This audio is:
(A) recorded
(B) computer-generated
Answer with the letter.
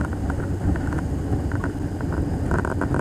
A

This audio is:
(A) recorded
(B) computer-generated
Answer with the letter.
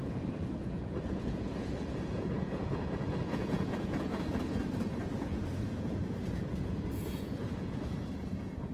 B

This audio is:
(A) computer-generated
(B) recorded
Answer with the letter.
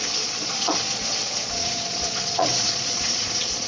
A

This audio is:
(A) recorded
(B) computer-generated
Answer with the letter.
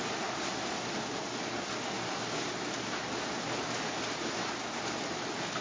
A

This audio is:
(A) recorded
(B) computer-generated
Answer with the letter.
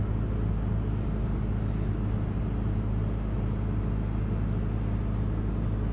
A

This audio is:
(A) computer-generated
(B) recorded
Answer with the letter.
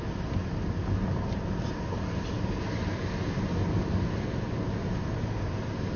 B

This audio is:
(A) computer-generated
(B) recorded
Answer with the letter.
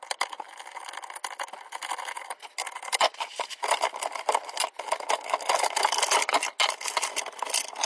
B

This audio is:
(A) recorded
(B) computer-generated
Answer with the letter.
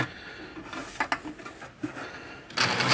A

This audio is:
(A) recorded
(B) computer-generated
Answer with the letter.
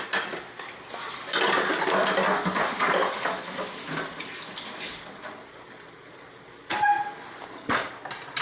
A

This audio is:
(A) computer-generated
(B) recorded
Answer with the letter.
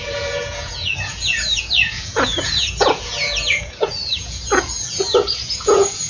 A